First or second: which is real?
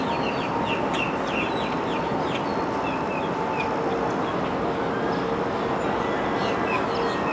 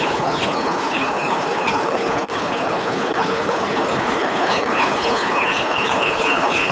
first